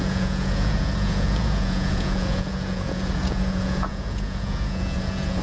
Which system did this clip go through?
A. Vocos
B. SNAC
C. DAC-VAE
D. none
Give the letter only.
A